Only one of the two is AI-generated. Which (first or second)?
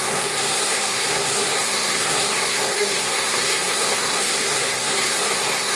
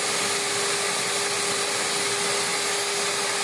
first